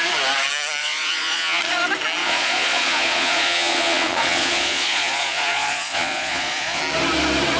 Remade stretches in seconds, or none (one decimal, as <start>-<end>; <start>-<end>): 0.8-1.6; 2.2-6.8